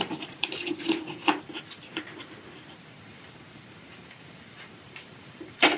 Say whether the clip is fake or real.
fake